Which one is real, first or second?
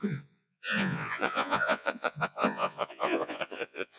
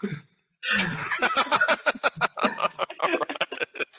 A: second